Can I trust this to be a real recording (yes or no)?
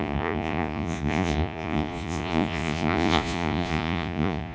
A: no